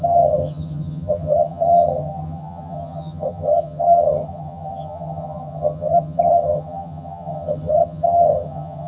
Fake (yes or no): yes